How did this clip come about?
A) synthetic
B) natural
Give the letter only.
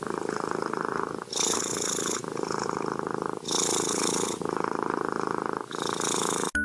B